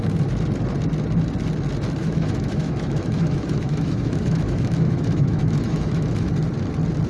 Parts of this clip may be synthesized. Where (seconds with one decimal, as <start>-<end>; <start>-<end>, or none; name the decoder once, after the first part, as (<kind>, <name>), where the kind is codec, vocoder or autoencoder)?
2.0-6.3 (autoencoder, DAC-VAE)